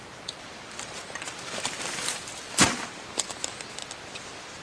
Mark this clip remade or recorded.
recorded